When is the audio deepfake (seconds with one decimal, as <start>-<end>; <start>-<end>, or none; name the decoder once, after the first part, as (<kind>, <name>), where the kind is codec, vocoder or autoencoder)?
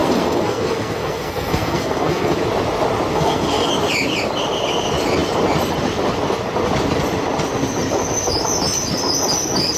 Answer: 0.0-2.4 (codec, SNAC); 3.1-3.7